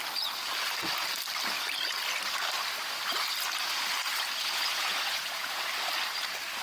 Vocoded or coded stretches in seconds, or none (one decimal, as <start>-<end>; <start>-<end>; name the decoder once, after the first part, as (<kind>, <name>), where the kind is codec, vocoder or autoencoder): 4.7-5.6 (vocoder, Vocos)